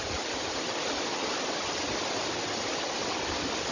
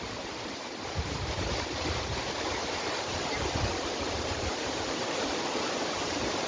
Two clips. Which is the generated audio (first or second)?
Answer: second